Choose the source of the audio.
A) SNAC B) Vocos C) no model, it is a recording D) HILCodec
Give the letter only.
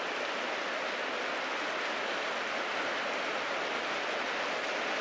C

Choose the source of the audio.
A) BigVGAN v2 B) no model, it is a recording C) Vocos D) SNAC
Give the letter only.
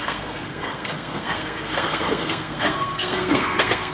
D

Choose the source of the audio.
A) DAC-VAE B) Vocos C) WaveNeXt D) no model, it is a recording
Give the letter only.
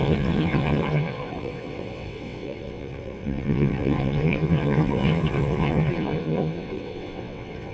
C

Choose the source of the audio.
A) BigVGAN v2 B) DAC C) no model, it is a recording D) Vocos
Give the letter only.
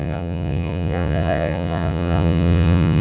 D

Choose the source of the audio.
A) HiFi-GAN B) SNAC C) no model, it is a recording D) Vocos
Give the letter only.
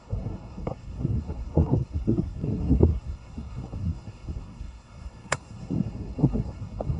B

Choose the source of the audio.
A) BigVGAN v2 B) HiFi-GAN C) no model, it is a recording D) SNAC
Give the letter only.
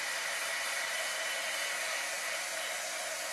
C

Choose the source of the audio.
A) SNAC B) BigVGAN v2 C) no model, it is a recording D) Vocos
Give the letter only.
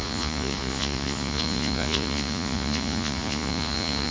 D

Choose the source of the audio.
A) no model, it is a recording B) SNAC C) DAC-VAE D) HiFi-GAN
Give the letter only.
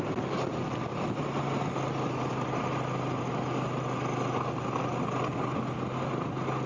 A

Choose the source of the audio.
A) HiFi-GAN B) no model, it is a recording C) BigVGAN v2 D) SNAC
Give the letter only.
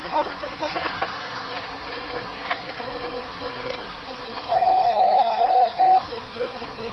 D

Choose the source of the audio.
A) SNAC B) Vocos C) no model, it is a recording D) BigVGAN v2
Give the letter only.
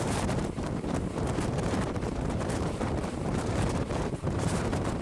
D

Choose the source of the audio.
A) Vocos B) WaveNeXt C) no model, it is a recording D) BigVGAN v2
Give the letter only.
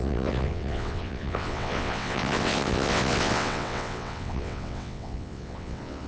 B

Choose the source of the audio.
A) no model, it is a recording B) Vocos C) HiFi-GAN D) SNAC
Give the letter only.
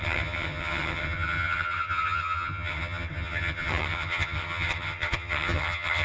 C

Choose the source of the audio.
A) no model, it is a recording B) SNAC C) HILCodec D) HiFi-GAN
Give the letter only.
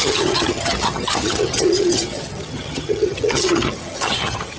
D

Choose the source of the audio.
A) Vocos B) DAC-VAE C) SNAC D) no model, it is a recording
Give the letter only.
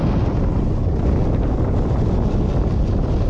D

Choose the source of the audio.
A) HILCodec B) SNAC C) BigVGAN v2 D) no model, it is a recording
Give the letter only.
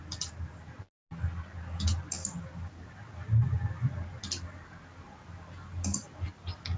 D